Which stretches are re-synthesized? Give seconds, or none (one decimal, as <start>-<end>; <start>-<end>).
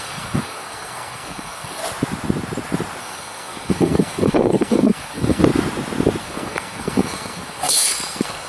0.0-1.8; 3.0-5.4; 6.2-8.5